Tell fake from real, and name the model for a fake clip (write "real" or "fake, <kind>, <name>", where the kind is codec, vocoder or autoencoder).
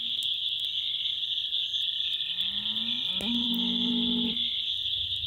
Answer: real